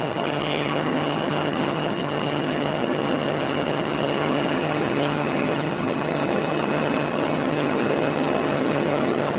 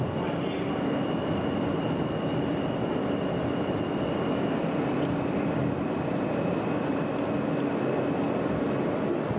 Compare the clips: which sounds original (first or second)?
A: second